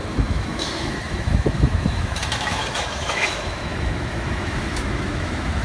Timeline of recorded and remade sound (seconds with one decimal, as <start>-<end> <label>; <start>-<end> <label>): 0.0-5.6 remade